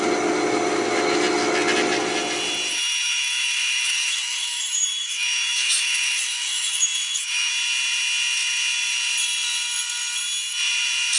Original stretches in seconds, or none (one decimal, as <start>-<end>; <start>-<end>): 0.0-2.7; 7.5-11.2